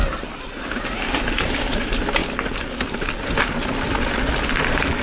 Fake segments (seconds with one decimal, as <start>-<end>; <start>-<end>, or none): none